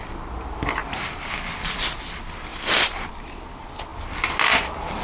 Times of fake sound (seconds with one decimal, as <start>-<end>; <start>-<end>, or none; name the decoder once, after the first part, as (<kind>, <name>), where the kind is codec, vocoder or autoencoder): 0.8-1.3 (vocoder, BigVGAN v2); 2.5-3.1

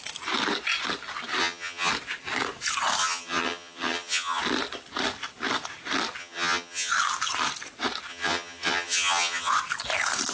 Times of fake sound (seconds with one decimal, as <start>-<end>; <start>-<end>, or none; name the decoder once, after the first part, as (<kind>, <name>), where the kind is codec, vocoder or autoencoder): 1.4-1.9 (vocoder, HiFi-GAN); 3.0-4.4; 6.2-6.9; 8.1-9.5

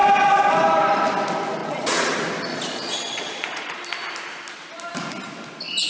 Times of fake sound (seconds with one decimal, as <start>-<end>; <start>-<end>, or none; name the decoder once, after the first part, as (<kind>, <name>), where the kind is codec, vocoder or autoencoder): 1.6-2.1 (vocoder, Vocos); 2.5-3.8

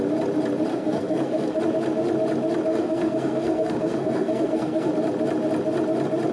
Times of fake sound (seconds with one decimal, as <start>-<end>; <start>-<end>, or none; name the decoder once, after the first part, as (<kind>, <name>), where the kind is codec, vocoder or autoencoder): 0.7-1.6 (codec, SNAC); 2.7-4.9

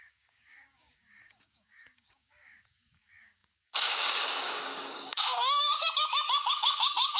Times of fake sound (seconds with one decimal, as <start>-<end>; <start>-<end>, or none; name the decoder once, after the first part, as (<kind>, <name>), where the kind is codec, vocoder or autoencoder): 0.0-7.2 (codec, DAC)

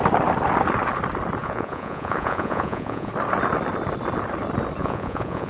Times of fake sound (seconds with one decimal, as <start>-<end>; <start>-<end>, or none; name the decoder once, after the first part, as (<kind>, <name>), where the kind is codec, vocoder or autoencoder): 1.4-3.1 (vocoder, Vocos); 4.8-5.5

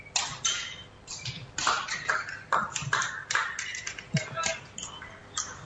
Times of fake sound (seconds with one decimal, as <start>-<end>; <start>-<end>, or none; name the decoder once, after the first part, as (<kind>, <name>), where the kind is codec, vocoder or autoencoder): none

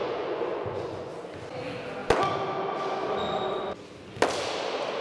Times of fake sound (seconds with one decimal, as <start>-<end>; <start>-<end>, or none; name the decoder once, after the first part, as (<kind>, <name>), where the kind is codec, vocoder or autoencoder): 0.0-1.1 (vocoder, Vocos)